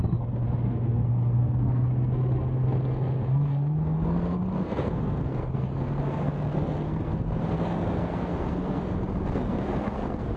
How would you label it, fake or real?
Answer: fake